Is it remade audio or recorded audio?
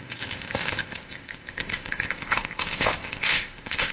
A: remade